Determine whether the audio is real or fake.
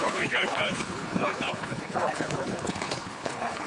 fake